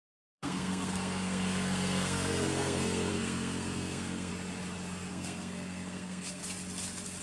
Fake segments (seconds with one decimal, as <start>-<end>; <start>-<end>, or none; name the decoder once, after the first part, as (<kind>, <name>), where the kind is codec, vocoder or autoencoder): 0.0-4.3 (codec, SNAC); 5.1-6.4